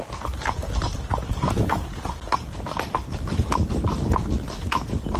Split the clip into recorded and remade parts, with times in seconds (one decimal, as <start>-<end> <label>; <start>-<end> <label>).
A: 0.0-1.1 recorded; 1.1-2.1 remade; 2.1-5.2 recorded